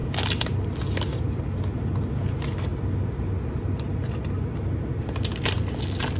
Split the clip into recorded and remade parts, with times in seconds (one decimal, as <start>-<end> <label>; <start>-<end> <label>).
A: 0.0-6.2 recorded